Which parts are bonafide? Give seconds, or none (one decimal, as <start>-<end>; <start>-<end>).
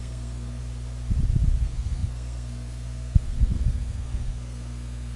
0.6-1.6